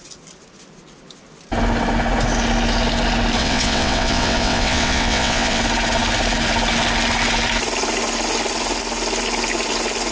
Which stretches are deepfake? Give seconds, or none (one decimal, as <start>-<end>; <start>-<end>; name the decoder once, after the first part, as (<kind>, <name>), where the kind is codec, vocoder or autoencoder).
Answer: 3.4-5.6 (vocoder, WaveNeXt)